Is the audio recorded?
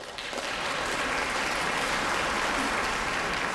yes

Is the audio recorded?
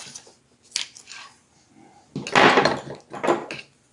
yes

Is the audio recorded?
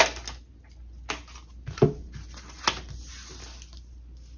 yes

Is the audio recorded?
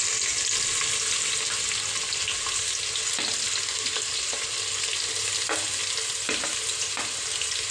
yes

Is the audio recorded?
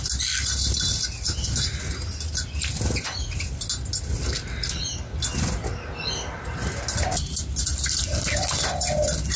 yes